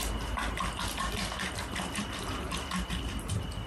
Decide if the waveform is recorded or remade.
recorded